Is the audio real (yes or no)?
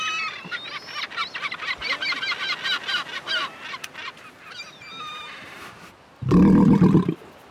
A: yes